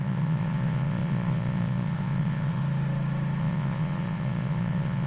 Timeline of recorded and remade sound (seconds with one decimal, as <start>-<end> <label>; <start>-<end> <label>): 0.0-2.6 remade; 2.6-3.4 recorded; 3.4-5.1 remade